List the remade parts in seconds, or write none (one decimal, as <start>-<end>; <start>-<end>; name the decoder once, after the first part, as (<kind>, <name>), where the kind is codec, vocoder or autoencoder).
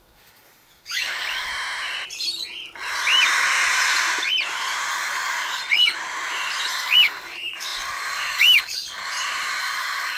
0.0-1.5 (codec, DAC); 4.9-5.6; 6.7-9.0; 9.6-10.2